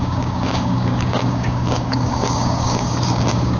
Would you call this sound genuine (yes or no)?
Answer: no